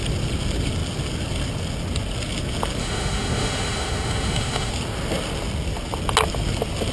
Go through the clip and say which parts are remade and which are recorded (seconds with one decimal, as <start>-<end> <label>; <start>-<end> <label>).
0.0-2.8 recorded; 2.8-4.7 remade; 4.7-6.9 recorded